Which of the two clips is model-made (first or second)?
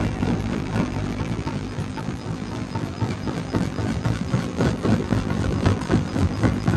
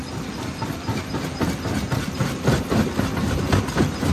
first